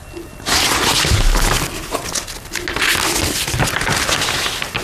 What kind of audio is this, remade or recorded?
recorded